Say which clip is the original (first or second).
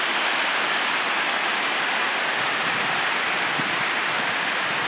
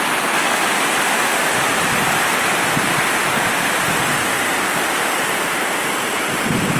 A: second